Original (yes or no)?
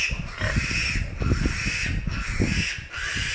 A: yes